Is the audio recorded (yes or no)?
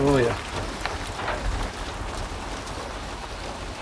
yes